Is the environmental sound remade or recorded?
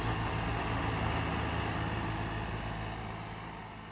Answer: recorded